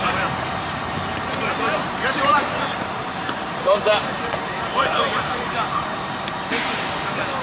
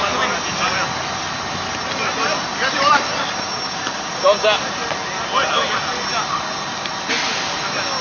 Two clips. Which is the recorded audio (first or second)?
second